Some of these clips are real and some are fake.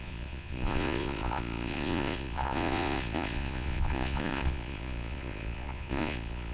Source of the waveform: fake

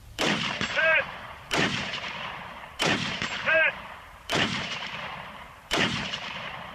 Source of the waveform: fake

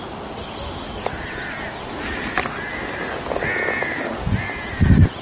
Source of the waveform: real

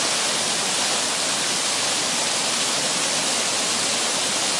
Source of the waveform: real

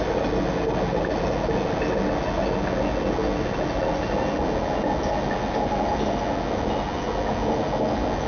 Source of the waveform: real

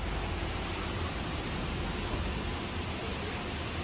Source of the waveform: real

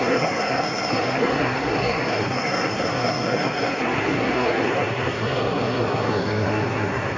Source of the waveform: fake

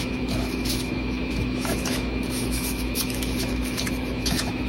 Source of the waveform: fake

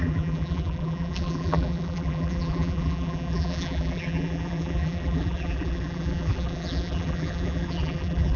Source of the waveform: fake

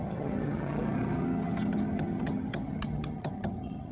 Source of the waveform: fake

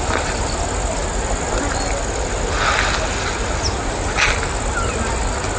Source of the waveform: real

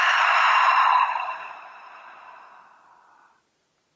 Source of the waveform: real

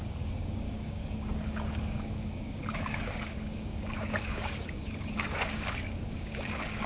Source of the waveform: fake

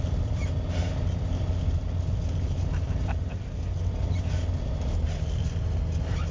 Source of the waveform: real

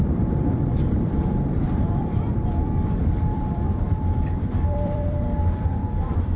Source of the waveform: fake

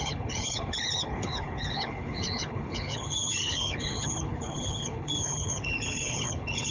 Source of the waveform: fake